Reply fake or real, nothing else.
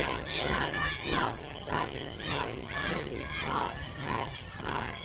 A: fake